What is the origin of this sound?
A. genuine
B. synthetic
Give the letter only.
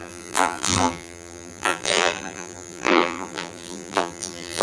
B